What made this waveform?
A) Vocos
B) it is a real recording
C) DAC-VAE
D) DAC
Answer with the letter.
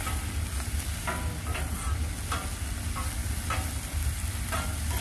B